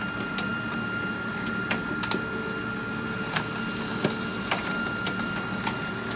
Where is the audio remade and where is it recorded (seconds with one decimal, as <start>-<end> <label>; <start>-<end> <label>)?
0.0-6.2 recorded